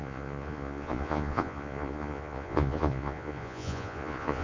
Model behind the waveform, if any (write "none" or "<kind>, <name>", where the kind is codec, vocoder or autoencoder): vocoder, Vocos